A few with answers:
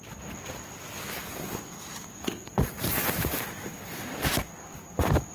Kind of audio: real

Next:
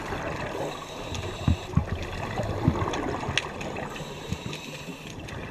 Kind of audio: real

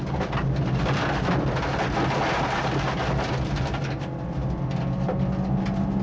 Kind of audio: real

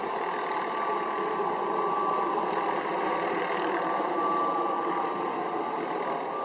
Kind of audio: fake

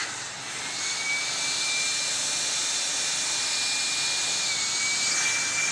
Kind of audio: real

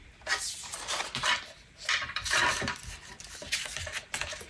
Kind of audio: fake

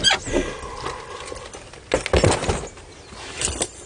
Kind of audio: real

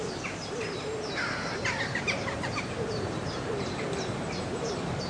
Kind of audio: fake